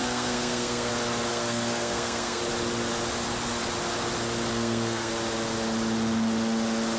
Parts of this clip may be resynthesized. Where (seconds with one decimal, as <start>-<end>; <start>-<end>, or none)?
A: 0.0-0.9; 1.3-2.4; 4.5-5.1